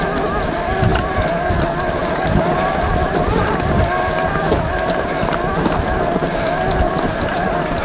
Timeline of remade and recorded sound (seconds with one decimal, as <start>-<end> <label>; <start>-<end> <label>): 0.0-0.9 recorded; 0.9-1.5 remade; 1.5-2.0 recorded; 2.0-2.7 remade; 2.7-7.8 recorded